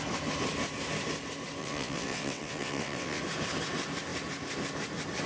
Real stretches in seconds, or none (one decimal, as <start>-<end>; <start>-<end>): 0.0-1.6; 3.2-5.3